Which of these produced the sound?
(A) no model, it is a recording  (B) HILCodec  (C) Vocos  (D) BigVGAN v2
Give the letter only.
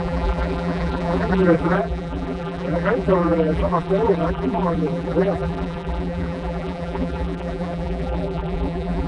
D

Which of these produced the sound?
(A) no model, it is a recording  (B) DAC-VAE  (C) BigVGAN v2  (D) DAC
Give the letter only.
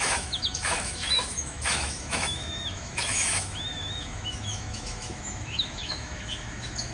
B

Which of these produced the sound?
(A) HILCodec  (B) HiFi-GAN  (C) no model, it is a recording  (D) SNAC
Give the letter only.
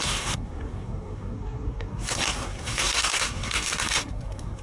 D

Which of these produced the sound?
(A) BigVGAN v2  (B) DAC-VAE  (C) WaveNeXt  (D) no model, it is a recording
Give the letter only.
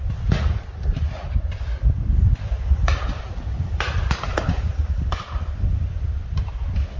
A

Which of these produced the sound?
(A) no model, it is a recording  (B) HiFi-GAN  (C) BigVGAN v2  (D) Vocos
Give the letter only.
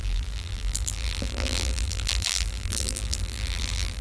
C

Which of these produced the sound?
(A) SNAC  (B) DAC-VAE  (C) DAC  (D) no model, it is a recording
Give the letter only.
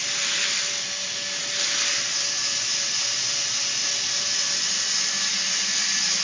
D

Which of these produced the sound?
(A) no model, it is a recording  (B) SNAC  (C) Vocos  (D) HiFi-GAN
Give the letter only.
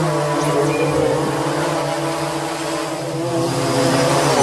A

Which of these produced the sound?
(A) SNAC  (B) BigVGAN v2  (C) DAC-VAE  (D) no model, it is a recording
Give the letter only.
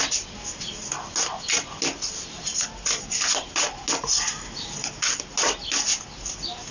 D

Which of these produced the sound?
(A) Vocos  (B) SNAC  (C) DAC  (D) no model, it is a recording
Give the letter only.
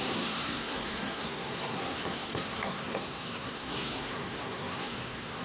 B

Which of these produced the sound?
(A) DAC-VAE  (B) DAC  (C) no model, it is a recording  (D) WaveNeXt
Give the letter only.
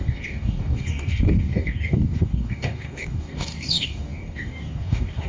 B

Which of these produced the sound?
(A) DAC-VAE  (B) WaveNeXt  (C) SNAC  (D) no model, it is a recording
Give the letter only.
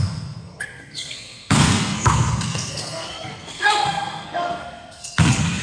C